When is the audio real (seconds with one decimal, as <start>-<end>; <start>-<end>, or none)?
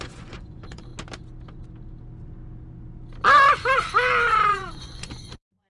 0.9-4.3